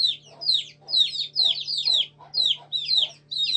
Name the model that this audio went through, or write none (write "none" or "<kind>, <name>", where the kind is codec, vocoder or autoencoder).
none